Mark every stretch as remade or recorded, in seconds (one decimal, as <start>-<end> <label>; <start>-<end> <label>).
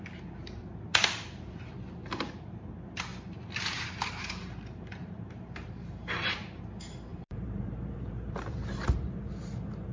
0.0-2.0 recorded; 2.0-2.7 remade; 2.7-3.1 recorded; 3.1-6.6 remade; 6.6-7.1 recorded; 7.1-9.2 remade; 9.2-9.9 recorded